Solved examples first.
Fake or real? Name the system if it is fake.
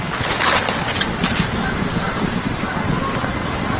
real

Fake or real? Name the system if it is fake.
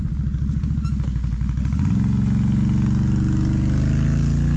real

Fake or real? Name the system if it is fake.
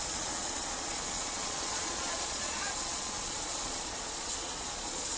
fake, vocoder, Vocos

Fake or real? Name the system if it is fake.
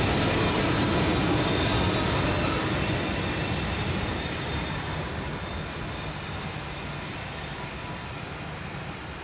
real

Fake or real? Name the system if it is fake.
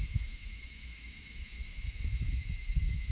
fake, autoencoder, DAC-VAE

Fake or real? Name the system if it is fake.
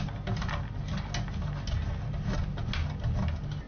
real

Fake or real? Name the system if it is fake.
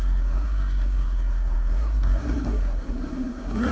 fake, codec, SNAC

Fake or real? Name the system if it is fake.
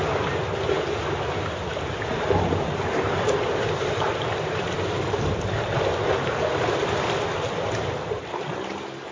real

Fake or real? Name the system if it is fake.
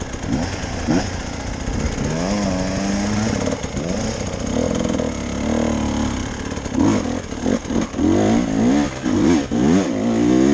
real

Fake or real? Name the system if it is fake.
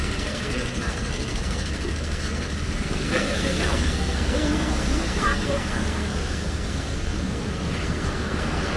fake, codec, SNAC